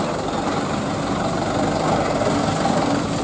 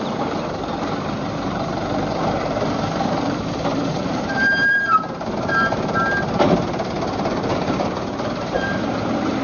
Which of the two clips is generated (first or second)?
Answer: second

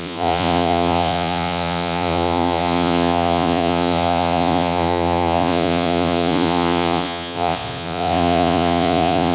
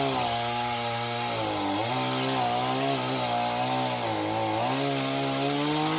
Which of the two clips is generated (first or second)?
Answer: first